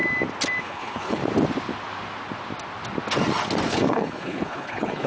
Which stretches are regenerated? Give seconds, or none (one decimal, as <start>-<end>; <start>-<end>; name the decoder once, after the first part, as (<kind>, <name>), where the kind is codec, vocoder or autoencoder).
0.6-1.2 (codec, HILCodec); 3.7-5.1